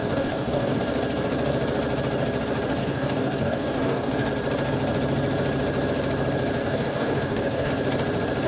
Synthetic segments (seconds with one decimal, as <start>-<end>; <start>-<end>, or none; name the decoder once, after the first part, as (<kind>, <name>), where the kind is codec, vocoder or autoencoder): 0.0-0.8 (codec, DAC); 2.8-4.3; 6.6-7.7